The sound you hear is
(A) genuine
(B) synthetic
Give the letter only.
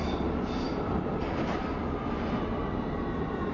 A